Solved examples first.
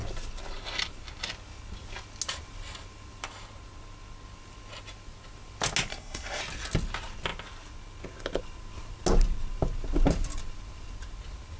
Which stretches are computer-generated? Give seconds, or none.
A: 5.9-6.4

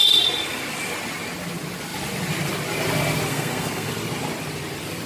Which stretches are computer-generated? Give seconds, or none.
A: 3.3-3.9